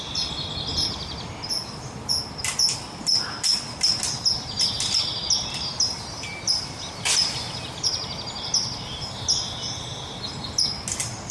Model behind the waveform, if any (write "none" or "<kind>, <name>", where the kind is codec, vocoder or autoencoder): none